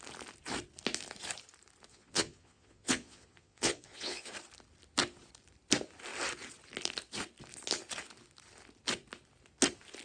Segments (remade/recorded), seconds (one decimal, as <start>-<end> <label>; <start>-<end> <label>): 0.0-1.9 recorded; 1.9-4.3 remade; 4.3-10.0 recorded